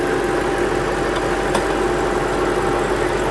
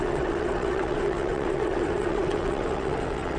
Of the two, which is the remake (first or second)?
second